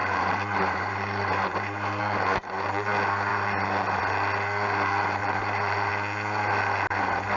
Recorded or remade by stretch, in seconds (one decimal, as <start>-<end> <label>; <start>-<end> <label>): 0.0-2.0 remade; 2.0-3.3 recorded; 3.3-4.0 remade; 4.0-5.2 recorded; 5.2-5.9 remade; 5.9-7.4 recorded